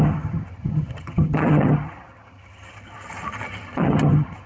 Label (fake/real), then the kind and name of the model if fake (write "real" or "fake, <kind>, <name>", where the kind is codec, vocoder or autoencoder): fake, vocoder, HiFi-GAN